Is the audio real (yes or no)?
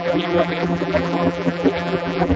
no